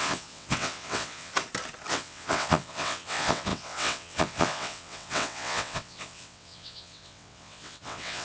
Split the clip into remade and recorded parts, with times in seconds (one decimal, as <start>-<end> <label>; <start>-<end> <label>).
0.0-1.3 remade; 1.3-1.9 recorded; 1.9-8.2 remade